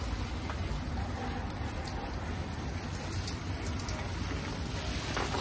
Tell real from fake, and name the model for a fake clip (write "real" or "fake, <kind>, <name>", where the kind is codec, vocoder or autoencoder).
fake, vocoder, BigVGAN v2